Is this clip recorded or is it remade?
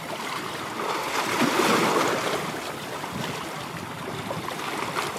recorded